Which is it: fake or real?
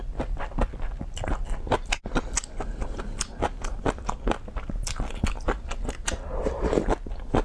real